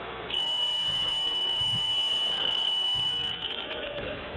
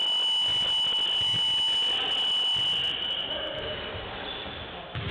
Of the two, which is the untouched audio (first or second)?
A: second